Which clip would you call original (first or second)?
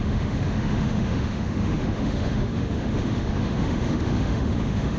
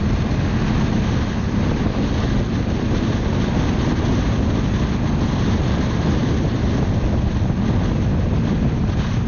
second